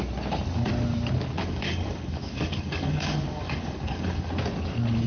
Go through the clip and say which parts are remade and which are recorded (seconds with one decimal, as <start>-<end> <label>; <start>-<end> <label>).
0.0-1.4 recorded; 1.4-4.3 remade; 4.3-5.1 recorded